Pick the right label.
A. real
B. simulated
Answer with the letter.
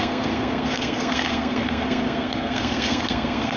B